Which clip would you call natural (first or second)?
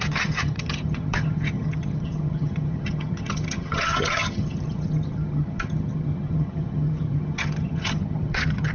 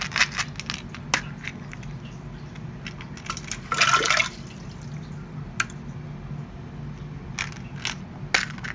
second